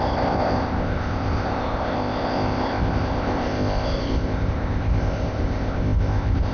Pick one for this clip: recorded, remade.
remade